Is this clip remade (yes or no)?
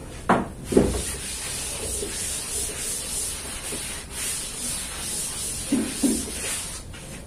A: no